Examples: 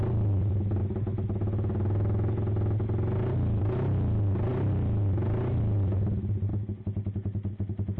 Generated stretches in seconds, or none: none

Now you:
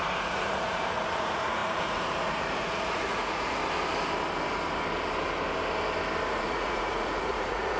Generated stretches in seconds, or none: 0.0-3.6 (vocoder, Vocos); 6.3-7.8

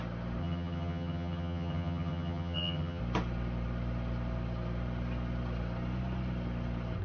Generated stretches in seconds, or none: 0.4-3.0 (vocoder, HiFi-GAN)

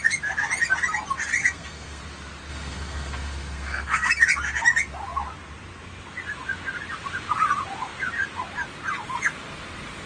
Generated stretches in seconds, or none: 1.4-2.0 (codec, SNAC); 2.5-4.1

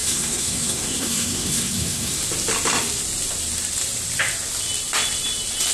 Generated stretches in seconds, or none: 0.0-2.2 (codec, SNAC)